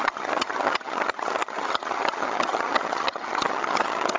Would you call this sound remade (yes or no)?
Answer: yes